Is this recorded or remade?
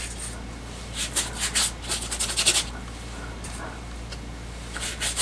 recorded